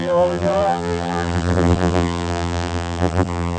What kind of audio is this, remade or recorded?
remade